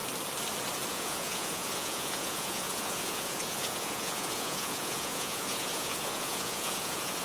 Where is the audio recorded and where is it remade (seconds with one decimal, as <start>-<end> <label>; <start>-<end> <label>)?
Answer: 0.0-0.9 recorded; 0.9-7.2 remade